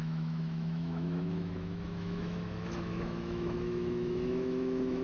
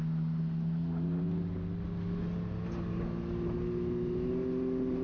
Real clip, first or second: second